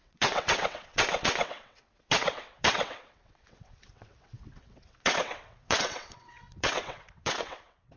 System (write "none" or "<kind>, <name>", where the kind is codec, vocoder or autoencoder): vocoder, WaveNeXt